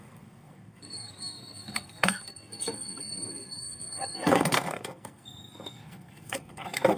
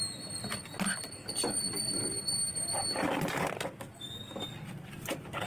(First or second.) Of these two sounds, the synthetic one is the first